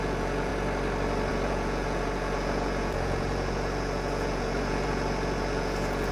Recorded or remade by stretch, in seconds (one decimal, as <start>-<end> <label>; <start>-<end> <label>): 0.0-0.5 remade; 0.5-1.3 recorded; 1.3-6.1 remade